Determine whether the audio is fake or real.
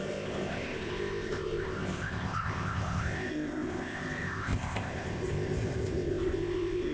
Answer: fake